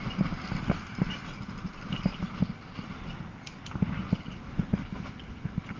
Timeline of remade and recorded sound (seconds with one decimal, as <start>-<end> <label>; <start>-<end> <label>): 0.0-5.8 recorded